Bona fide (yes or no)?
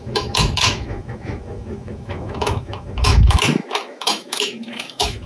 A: no